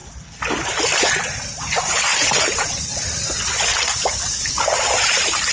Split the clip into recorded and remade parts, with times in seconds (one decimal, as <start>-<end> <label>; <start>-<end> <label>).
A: 0.0-1.2 recorded; 1.2-5.5 remade